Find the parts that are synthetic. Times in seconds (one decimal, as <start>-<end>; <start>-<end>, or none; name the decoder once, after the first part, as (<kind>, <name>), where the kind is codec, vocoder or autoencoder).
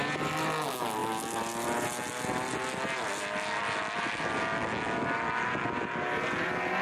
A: none